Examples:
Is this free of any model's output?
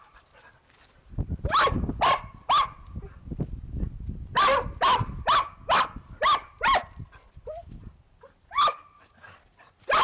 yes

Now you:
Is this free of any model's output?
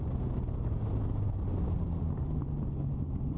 yes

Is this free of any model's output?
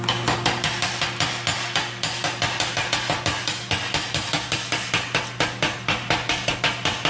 yes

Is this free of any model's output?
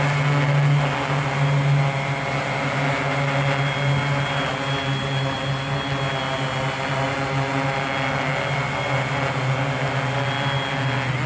yes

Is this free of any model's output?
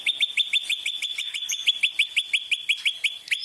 yes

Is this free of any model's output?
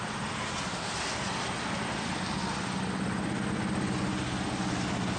yes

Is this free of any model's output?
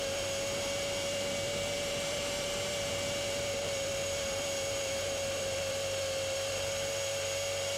no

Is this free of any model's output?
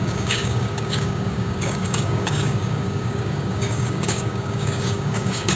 no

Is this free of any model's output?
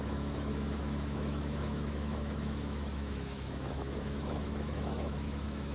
no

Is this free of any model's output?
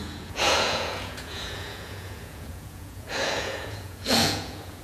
no